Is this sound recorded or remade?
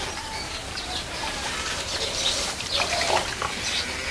recorded